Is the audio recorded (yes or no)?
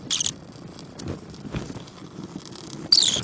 yes